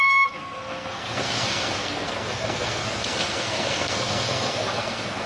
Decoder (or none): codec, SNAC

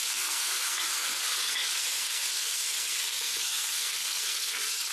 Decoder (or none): codec, SNAC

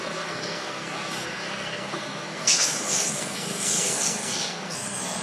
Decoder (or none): codec, SNAC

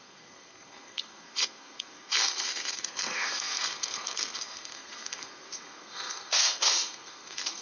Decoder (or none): codec, SNAC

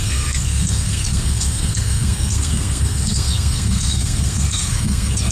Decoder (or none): codec, SNAC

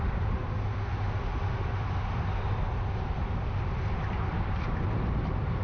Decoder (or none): none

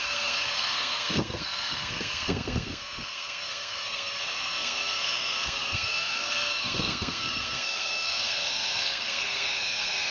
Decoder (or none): codec, SNAC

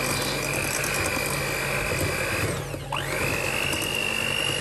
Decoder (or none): none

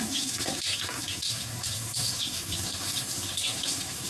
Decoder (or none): codec, SNAC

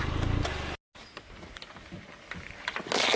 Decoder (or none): none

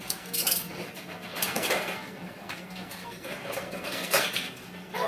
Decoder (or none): codec, SNAC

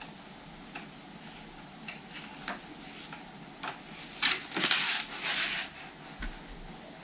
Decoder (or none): none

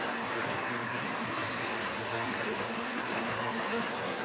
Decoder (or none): codec, SNAC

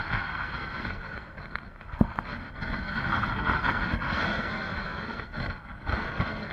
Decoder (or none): codec, SNAC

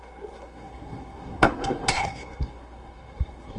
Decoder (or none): codec, SNAC